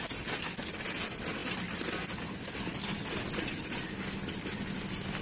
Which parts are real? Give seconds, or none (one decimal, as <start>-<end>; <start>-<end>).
0.0-5.2